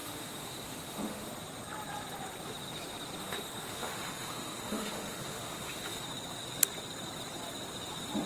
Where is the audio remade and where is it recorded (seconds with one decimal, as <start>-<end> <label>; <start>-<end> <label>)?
0.0-1.3 remade; 1.3-3.2 recorded; 3.2-6.0 remade; 6.0-8.3 recorded

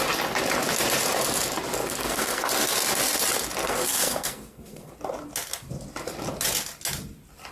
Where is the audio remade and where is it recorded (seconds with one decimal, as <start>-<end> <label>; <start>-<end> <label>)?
0.0-1.8 recorded; 1.8-2.4 remade; 2.4-3.6 recorded; 3.6-4.9 remade; 4.9-7.5 recorded

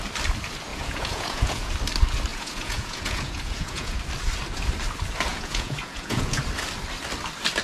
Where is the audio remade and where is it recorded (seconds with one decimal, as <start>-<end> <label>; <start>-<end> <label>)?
0.0-0.7 recorded; 0.7-1.7 remade; 1.7-2.3 recorded; 2.3-4.0 remade; 4.0-5.3 recorded; 5.3-6.4 remade; 6.4-7.6 recorded

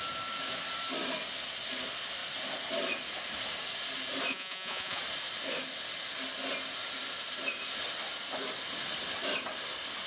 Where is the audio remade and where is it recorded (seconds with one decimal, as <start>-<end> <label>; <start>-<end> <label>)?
0.0-4.3 recorded; 4.3-5.0 remade; 5.0-10.1 recorded

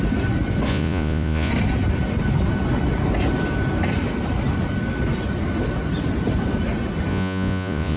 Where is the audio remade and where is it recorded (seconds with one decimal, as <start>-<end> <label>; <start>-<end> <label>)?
0.0-0.7 recorded; 0.7-1.5 remade; 1.5-7.1 recorded; 7.1-8.0 remade

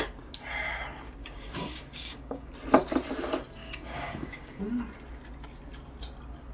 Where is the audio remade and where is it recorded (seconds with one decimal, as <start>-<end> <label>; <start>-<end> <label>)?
0.0-1.2 recorded; 1.2-2.5 remade; 2.5-3.6 recorded; 3.6-4.6 remade; 4.6-6.5 recorded

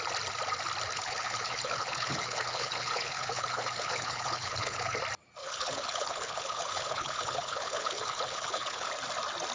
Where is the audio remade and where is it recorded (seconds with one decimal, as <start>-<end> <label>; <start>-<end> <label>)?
0.0-0.9 recorded; 0.9-5.0 remade; 5.0-5.4 recorded; 5.4-8.9 remade; 8.9-9.5 recorded

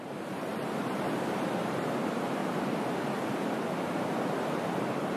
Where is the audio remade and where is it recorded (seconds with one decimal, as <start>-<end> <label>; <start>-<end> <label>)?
0.0-2.4 remade; 2.4-3.3 recorded; 3.3-5.2 remade